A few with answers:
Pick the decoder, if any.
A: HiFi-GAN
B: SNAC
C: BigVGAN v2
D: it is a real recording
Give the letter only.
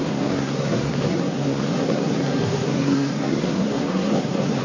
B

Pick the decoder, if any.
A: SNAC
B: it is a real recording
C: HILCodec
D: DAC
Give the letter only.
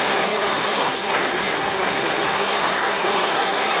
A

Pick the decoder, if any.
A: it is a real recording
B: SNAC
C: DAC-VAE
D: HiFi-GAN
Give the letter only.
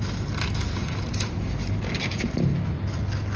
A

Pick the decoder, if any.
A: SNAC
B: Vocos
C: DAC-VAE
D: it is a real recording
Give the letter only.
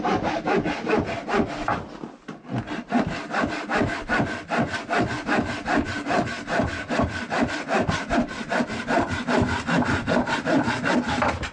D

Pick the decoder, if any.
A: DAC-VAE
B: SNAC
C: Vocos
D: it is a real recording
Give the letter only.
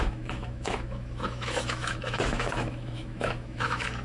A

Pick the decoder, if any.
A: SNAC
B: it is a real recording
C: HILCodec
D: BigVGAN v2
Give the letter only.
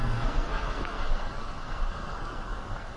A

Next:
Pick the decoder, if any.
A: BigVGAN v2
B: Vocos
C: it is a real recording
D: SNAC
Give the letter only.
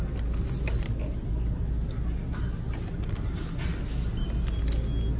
C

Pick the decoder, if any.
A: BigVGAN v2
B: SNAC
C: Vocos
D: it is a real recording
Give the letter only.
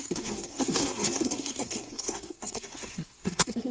B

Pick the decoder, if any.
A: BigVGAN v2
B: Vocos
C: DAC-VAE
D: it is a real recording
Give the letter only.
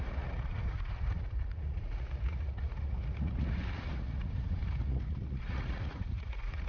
B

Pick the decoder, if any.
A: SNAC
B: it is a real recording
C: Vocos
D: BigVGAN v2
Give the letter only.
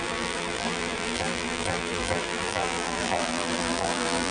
D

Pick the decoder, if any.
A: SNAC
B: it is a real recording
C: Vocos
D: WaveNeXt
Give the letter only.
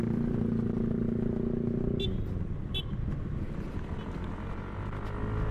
B